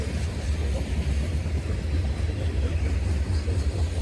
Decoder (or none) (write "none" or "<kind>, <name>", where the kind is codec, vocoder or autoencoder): none